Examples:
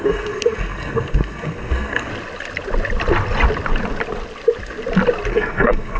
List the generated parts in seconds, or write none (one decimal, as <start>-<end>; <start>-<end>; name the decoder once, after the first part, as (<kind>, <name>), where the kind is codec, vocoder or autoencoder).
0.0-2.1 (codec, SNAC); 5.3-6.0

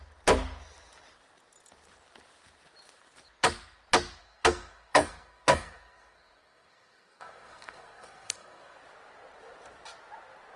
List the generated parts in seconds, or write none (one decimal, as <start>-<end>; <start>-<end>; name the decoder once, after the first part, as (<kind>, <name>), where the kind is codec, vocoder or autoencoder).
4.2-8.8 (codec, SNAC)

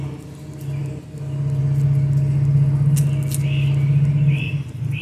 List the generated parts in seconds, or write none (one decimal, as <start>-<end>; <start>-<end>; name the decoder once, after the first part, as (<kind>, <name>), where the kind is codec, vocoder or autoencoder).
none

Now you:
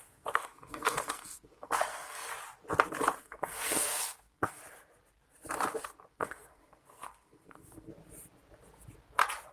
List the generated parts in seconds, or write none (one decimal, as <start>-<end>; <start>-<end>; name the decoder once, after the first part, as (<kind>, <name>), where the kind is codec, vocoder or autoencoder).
0.0-2.3 (codec, SNAC); 3.2-4.6; 6.1-7.9

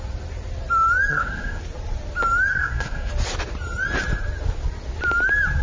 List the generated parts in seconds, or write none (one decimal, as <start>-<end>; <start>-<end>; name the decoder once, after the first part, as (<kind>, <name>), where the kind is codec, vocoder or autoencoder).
1.1-1.6 (codec, SNAC); 2.5-3.1

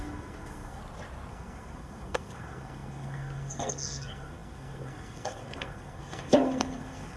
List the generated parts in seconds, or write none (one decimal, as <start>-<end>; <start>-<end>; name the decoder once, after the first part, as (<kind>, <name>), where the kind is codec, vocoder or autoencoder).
0.0-0.8 (codec, SNAC); 1.3-7.2

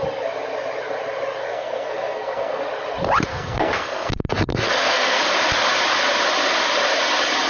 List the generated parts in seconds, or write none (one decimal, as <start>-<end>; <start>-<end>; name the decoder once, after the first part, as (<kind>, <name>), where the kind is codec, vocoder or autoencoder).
1.5-2.6 (codec, SNAC); 3.3-5.2